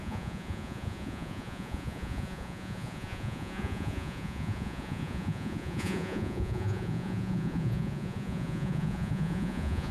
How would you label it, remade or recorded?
remade